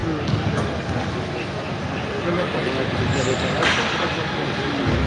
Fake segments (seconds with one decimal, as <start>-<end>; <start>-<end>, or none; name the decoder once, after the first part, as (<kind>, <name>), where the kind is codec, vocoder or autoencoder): none